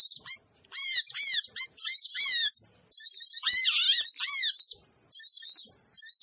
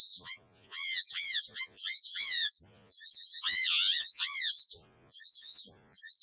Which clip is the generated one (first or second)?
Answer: second